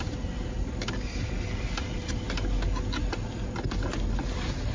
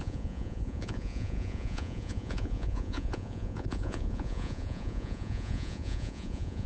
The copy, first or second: second